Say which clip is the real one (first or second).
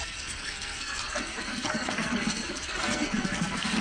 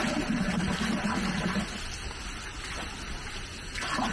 second